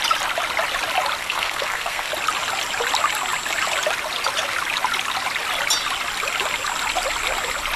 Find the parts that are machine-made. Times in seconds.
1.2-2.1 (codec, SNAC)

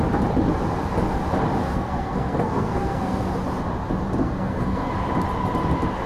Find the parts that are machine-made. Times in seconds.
1.7-3.3 (codec, SNAC); 4.2-4.9